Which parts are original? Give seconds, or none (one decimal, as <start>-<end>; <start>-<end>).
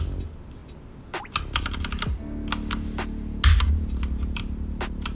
0.0-5.2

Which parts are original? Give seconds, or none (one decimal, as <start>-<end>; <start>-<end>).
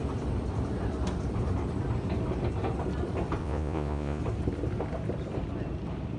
0.0-3.4; 4.2-6.2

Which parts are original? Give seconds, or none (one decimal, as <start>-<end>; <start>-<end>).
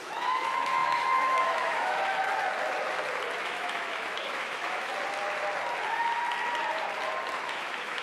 2.3-3.4; 4.9-7.4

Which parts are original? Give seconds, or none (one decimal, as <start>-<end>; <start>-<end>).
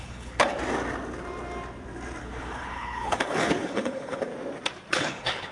0.5-2.2; 4.3-4.9